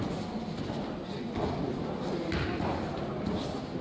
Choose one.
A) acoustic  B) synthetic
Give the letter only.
A